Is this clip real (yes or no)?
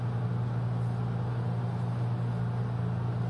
yes